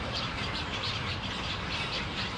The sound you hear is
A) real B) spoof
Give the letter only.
B